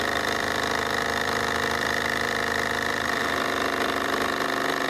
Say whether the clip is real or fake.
fake